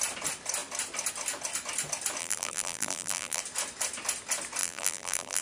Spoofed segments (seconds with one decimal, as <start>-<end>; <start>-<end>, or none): 2.2-3.4; 4.6-5.4